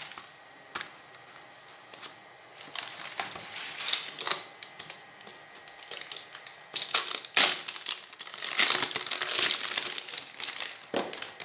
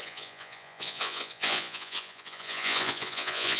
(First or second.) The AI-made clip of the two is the second